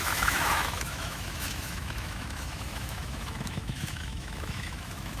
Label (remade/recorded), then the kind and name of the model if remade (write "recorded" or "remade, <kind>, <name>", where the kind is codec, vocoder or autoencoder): remade, autoencoder, DAC-VAE